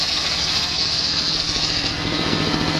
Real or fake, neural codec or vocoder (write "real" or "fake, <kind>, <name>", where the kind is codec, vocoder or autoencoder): fake, codec, SNAC